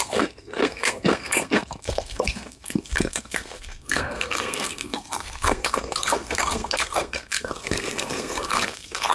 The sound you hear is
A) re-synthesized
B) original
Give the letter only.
A